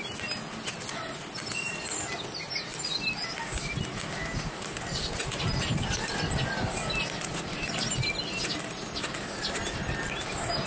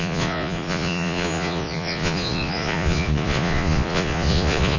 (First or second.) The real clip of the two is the first